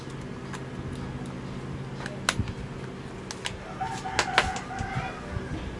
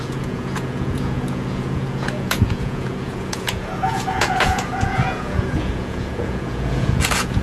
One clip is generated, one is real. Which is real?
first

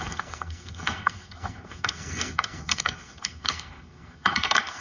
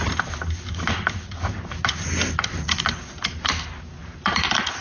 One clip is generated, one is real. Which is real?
second